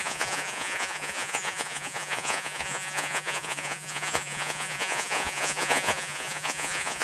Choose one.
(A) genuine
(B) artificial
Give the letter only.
B